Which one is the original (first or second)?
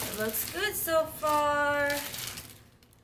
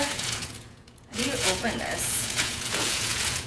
first